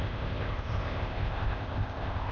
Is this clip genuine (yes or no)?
no